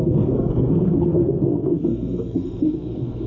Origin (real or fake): fake